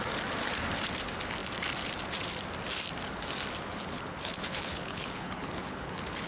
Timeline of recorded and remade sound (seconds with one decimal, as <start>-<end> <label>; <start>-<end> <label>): 0.0-3.8 recorded; 3.8-6.3 remade